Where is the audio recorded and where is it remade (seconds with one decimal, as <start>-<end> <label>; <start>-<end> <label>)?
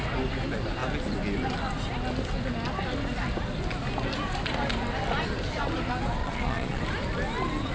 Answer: 0.0-6.2 recorded; 6.2-6.8 remade; 6.8-7.7 recorded